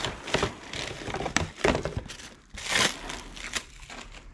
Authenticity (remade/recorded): recorded